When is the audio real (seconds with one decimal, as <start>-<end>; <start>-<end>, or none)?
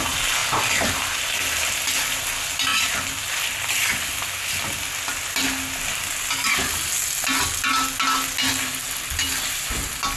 0.0-10.2